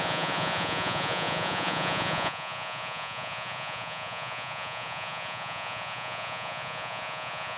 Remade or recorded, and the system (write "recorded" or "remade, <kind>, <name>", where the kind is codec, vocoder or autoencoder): remade, vocoder, Vocos